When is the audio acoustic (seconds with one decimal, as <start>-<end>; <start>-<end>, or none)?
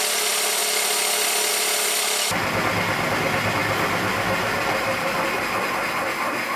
0.0-6.6